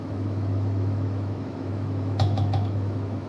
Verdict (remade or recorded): remade